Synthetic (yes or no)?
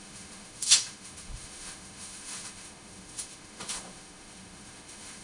yes